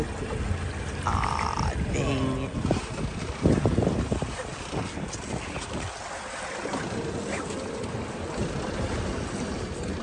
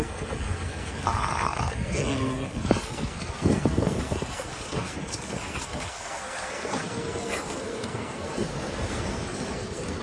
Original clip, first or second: first